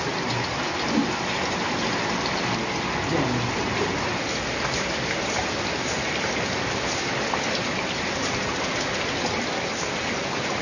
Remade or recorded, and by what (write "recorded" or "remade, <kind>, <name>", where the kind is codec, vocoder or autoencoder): recorded